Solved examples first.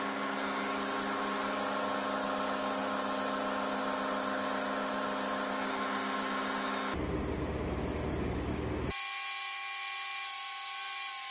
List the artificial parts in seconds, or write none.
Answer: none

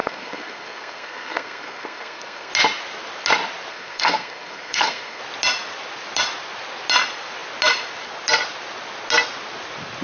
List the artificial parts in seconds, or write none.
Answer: 0.0-2.5; 3.7-5.2